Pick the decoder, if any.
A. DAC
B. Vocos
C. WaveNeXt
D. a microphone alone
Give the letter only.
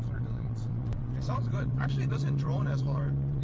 C